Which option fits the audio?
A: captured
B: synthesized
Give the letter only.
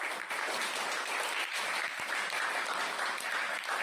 A